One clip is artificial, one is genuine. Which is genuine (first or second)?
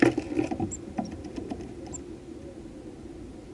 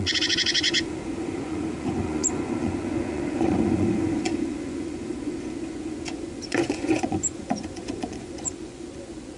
first